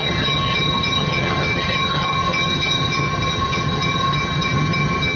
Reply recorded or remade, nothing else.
remade